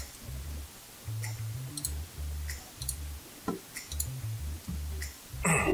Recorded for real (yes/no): yes